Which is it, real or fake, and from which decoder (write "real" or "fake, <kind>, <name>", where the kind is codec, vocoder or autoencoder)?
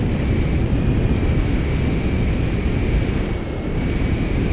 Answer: real